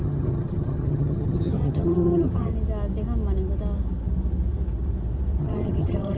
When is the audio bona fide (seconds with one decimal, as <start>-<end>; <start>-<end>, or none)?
2.5-5.4